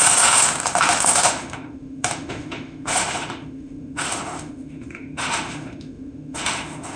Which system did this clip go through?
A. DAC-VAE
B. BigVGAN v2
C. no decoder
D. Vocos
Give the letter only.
A